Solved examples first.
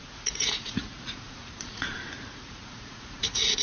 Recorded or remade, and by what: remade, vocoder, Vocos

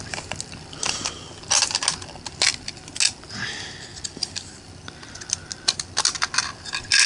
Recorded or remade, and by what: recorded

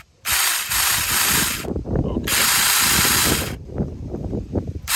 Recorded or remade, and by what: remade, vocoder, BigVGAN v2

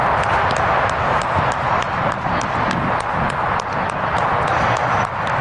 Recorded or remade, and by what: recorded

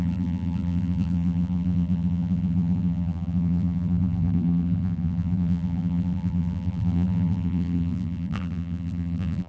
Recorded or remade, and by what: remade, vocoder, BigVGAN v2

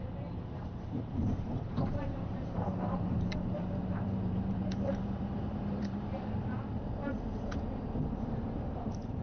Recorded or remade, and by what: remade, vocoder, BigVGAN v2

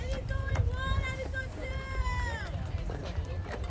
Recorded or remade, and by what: remade, vocoder, BigVGAN v2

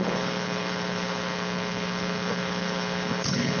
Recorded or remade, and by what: remade, codec, HILCodec